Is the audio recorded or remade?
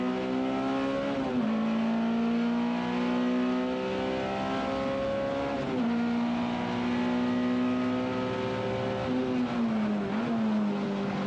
recorded